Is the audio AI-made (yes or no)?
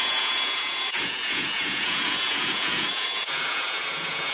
yes